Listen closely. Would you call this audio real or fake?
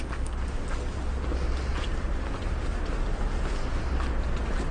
real